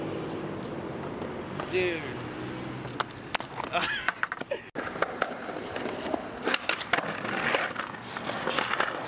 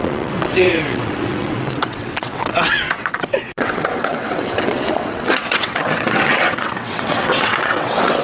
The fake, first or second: second